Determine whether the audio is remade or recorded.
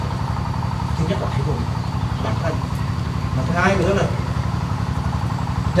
remade